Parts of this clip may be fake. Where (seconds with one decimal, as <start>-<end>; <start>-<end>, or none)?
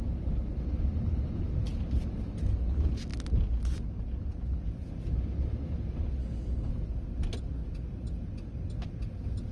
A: 6.2-6.7